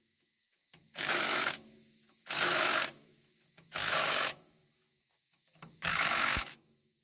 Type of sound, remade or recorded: remade